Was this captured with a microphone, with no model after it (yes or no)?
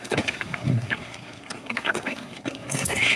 no